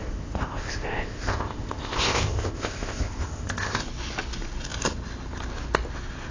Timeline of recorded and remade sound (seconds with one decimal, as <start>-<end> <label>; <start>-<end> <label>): 0.0-3.8 remade; 3.8-6.3 recorded